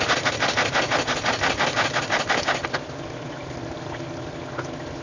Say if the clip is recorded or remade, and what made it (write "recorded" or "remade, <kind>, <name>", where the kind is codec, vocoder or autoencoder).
recorded